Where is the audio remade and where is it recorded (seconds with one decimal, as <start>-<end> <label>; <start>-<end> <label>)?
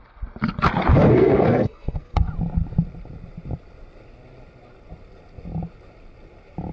0.0-0.9 recorded; 0.9-2.3 remade; 2.3-6.7 recorded